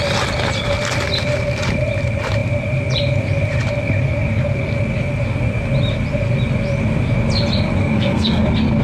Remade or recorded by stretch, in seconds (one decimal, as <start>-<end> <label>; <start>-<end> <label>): 0.0-7.8 recorded; 7.8-8.4 remade; 8.4-8.8 recorded